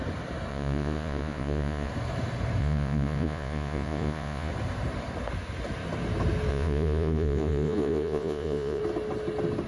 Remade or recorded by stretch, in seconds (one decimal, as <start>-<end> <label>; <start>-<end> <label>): 0.0-0.5 recorded; 0.5-1.9 remade; 1.9-2.6 recorded; 2.6-4.5 remade; 4.5-6.5 recorded; 6.5-8.8 remade; 8.8-9.7 recorded